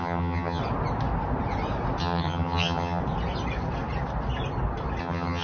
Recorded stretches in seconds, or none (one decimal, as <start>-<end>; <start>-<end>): 0.6-2.0; 3.0-5.0